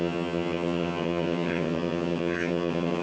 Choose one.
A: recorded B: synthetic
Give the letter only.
B